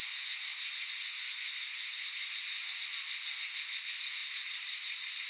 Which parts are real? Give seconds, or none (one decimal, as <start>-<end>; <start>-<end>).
0.0-4.2